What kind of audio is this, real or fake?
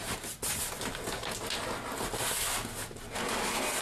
real